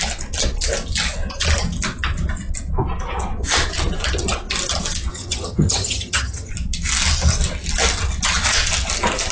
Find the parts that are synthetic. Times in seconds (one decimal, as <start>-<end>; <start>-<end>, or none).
5.1-6.5